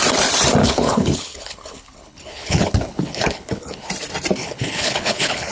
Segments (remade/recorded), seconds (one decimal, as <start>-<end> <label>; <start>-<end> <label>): 0.0-0.6 recorded; 0.6-3.9 remade; 3.9-4.4 recorded; 4.4-5.5 remade